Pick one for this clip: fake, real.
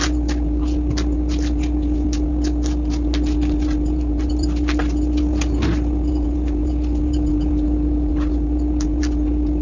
real